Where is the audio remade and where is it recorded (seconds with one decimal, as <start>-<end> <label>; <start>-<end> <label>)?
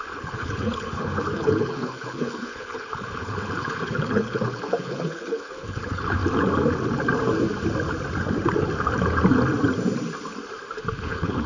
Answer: 0.0-6.2 remade; 6.2-10.9 recorded; 10.9-11.5 remade